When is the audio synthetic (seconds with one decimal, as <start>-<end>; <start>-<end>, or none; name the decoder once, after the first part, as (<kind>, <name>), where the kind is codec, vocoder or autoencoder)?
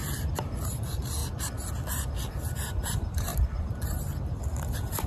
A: 0.6-1.2 (vocoder, BigVGAN v2); 2.3-3.3; 4.6-5.1